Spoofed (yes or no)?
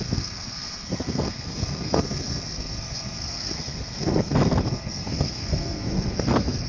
yes